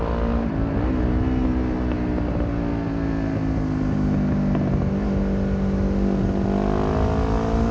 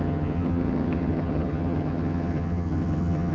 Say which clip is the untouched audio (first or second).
first